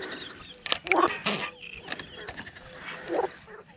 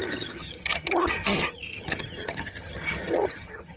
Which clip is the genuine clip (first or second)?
first